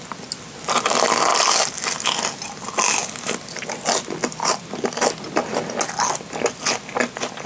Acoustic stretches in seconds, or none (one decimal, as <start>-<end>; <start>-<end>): 0.0-7.5